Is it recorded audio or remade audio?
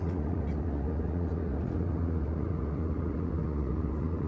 remade